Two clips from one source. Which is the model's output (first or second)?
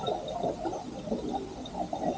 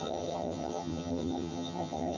second